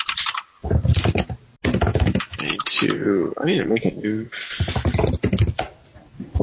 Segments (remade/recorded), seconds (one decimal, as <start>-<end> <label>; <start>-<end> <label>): 0.0-1.9 recorded; 1.9-2.4 remade; 2.4-3.3 recorded; 3.3-4.3 remade; 4.3-6.4 recorded